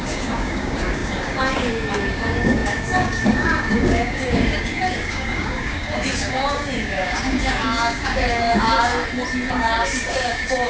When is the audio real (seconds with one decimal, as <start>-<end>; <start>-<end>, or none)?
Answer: 8.9-9.5